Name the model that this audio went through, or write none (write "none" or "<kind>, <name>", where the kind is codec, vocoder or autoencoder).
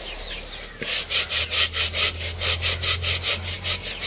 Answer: none